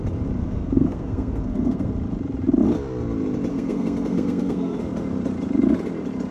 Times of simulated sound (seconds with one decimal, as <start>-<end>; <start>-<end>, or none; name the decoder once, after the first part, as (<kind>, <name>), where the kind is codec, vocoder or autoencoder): 0.4-1.9 (codec, SNAC); 3.5-4.8